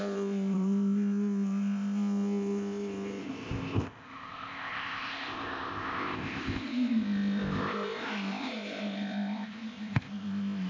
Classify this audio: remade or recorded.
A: remade